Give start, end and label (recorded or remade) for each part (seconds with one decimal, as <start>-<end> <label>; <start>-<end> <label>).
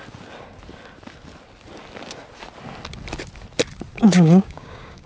0.0-3.9 recorded; 3.9-5.1 remade